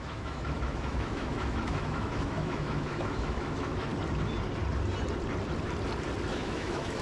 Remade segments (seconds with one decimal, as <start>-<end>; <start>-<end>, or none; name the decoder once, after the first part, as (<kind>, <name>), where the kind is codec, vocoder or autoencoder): 0.0-3.9 (autoencoder, DAC-VAE); 6.3-7.0